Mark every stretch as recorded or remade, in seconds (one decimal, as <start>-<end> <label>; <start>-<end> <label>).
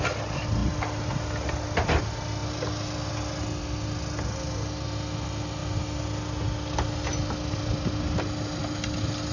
0.0-9.3 recorded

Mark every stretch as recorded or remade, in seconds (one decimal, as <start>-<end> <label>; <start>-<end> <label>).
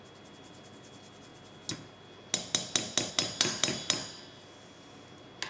0.0-5.5 recorded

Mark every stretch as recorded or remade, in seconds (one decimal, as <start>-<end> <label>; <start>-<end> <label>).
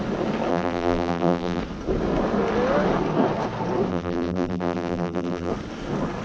0.0-0.5 recorded; 0.5-1.6 remade; 1.6-3.9 recorded; 3.9-5.5 remade; 5.5-6.2 recorded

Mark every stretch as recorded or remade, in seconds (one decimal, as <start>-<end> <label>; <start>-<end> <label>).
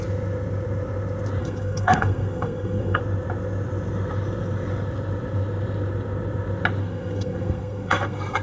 0.0-1.4 recorded; 1.4-3.0 remade; 3.0-6.8 recorded; 6.8-8.4 remade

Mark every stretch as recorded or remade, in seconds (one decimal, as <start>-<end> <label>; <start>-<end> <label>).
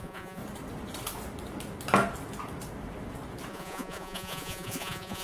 0.0-0.4 remade; 0.4-3.5 recorded; 3.5-5.2 remade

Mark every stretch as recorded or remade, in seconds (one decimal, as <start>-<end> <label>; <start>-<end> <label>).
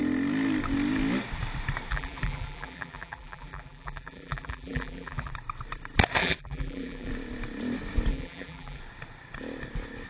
0.0-1.9 recorded; 1.9-5.3 remade; 5.3-6.2 recorded; 6.2-7.1 remade; 7.1-8.1 recorded; 8.1-8.8 remade; 8.8-10.1 recorded